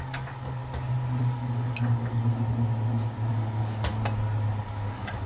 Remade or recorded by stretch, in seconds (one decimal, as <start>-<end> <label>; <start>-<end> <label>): 0.0-0.6 remade; 0.6-1.2 recorded; 1.2-2.2 remade; 2.2-3.3 recorded; 3.3-3.9 remade; 3.9-4.6 recorded; 4.6-5.3 remade

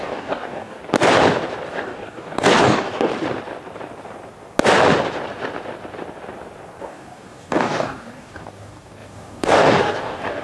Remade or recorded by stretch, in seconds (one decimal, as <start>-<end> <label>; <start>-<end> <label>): 0.0-0.8 remade; 0.8-1.7 recorded; 1.7-3.1 remade; 3.1-6.8 recorded; 6.8-10.4 remade